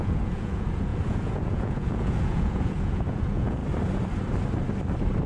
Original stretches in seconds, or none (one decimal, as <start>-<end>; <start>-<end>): 3.6-5.3